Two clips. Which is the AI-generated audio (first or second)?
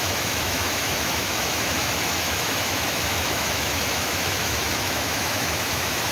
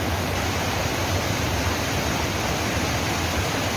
first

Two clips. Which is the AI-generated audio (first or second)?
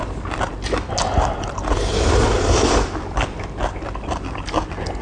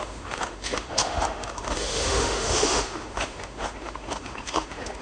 second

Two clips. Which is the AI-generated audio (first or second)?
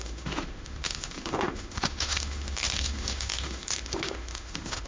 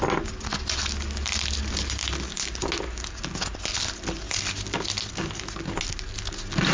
first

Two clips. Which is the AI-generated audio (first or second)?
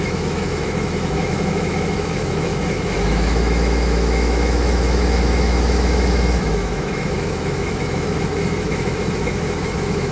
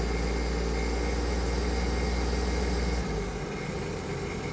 first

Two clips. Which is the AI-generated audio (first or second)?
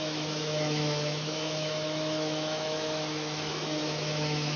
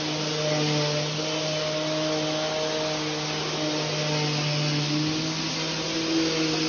first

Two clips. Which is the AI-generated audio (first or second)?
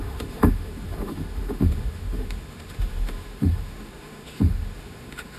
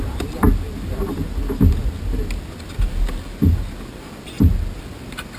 first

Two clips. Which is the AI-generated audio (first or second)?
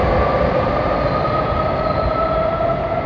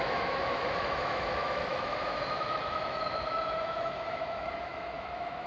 second